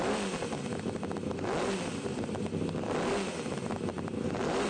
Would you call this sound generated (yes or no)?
no